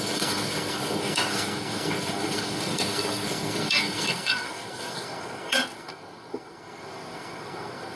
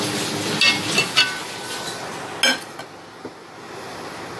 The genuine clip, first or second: second